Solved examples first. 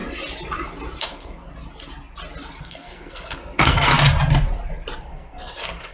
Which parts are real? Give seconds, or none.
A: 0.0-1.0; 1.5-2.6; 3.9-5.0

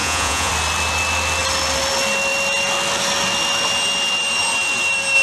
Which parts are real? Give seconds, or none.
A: 0.5-5.2

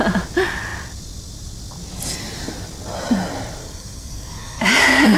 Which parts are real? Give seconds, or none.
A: 0.0-3.6; 4.6-5.2

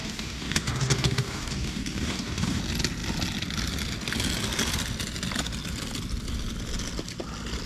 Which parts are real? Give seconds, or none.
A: 2.6-7.7

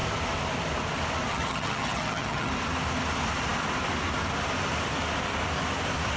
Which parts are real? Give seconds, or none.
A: 0.0-1.3; 2.5-6.2

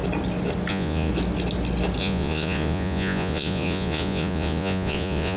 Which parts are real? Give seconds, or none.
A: 0.0-0.7; 1.1-2.0

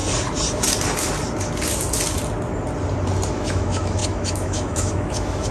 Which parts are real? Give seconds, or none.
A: 0.0-3.3

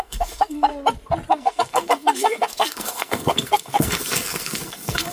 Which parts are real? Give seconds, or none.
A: 0.7-1.3